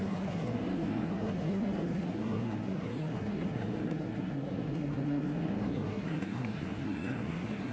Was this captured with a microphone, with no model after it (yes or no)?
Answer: no